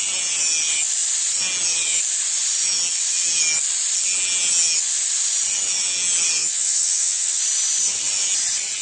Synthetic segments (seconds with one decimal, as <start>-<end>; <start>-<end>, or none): 6.4-7.4